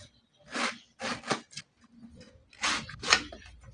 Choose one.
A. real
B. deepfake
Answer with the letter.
A